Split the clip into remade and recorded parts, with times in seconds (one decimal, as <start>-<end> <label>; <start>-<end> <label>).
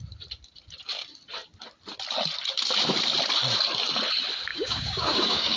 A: 0.0-4.5 recorded; 4.5-5.6 remade